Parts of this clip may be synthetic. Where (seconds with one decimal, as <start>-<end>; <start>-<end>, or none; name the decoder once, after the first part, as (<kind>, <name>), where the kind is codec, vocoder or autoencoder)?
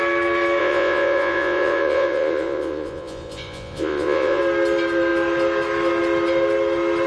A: 0.6-4.4 (vocoder, Vocos)